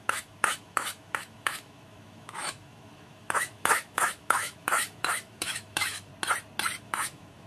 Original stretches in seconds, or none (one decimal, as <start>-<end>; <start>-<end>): 6.1-6.8